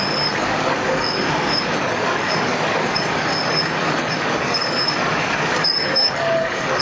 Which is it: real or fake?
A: fake